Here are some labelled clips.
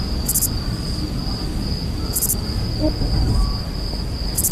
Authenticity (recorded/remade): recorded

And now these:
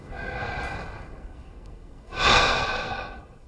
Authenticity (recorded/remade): remade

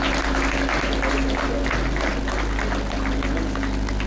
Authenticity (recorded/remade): recorded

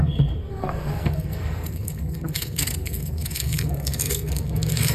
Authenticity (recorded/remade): remade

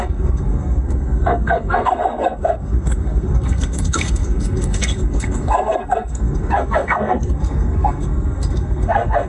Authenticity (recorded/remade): remade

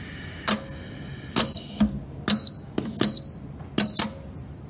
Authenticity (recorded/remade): recorded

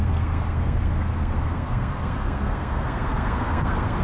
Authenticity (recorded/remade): remade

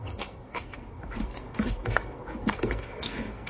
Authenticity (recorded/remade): remade